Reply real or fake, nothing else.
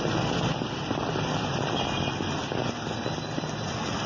real